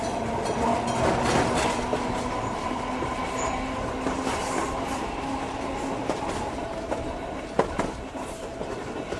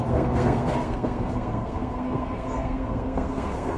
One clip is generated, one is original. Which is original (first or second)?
first